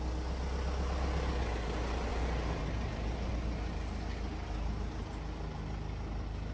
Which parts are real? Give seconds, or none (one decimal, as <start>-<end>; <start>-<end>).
0.0-2.1; 3.3-6.5